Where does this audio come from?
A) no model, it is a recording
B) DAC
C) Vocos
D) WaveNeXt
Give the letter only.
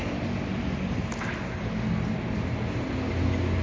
A